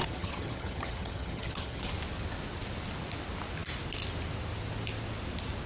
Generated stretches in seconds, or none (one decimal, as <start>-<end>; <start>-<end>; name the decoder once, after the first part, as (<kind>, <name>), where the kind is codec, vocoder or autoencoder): 0.0-1.9 (vocoder, HiFi-GAN)